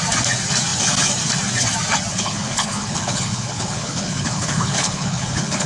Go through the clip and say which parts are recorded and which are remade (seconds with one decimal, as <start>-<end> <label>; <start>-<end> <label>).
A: 0.0-2.1 recorded; 2.1-5.7 remade